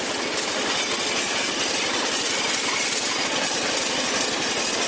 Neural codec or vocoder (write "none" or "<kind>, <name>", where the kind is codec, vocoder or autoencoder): none